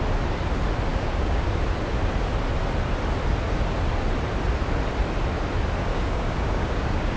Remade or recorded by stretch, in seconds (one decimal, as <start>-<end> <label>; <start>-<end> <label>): 0.0-0.9 recorded; 0.9-1.6 remade; 1.6-5.8 recorded; 5.8-7.2 remade